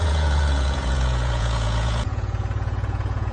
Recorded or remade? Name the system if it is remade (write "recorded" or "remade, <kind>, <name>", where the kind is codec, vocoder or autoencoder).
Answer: remade, vocoder, Vocos